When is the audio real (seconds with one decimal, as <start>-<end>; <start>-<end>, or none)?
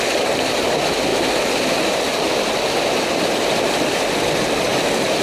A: 0.0-5.2